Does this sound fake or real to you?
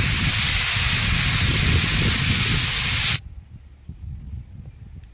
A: real